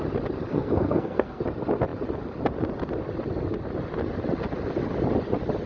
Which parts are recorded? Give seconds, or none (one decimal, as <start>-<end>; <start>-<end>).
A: 0.0-0.5; 1.4-5.7